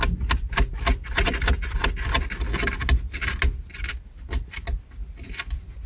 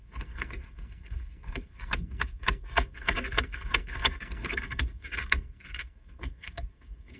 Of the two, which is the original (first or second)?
first